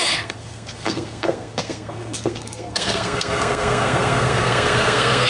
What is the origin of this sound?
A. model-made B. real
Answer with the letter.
A